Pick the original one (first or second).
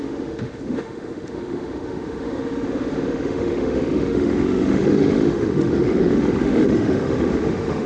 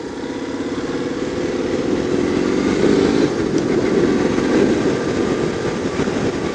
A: second